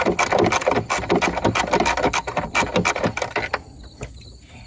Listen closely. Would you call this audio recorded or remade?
recorded